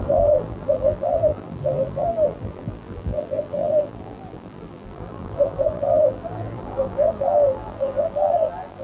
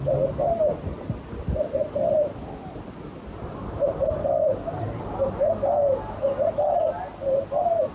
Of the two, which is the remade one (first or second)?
first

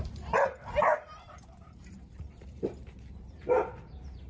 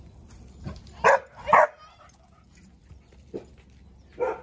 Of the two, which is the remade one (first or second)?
first